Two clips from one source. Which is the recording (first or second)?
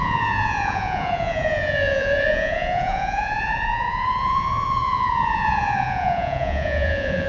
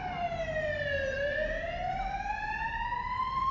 second